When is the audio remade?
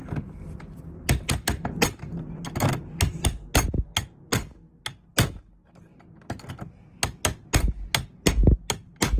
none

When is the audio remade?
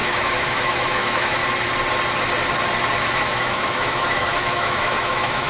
0.0-1.4 (autoencoder, DAC-VAE); 3.1-5.5